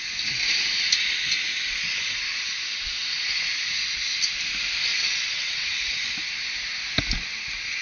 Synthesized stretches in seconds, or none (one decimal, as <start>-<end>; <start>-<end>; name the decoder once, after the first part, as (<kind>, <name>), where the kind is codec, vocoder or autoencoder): 4.9-5.8 (vocoder, WaveNeXt)